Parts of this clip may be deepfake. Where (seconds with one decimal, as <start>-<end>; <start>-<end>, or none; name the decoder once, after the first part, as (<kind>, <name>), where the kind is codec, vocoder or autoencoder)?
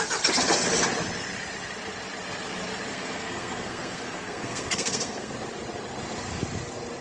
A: 2.9-5.3 (codec, SNAC)